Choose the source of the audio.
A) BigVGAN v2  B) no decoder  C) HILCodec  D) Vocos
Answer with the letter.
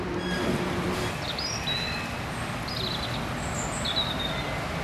B